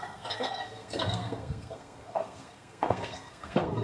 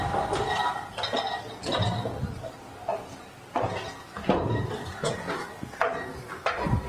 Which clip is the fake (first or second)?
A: first